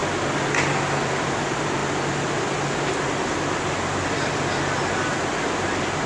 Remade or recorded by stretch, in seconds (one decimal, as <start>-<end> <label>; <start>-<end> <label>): 0.0-1.2 recorded; 1.2-1.8 remade; 1.8-5.5 recorded; 5.5-6.1 remade